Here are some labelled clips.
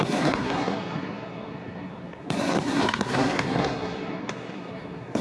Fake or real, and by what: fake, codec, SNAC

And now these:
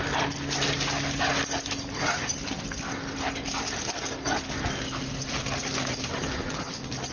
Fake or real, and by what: real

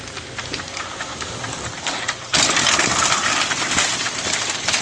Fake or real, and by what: real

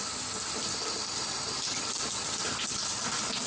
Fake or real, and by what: real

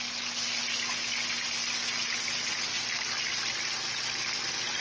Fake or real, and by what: real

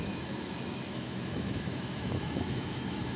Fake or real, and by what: fake, autoencoder, DAC-VAE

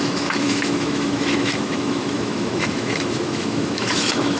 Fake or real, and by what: fake, autoencoder, DAC-VAE